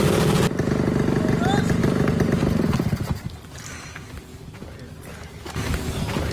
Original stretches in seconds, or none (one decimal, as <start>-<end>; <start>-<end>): 0.0-1.8; 2.4-6.3